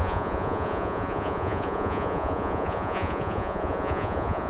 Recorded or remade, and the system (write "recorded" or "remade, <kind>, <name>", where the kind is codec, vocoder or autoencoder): remade, vocoder, Vocos